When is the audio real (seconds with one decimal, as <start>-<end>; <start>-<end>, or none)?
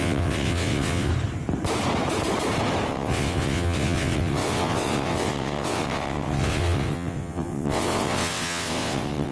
1.1-2.9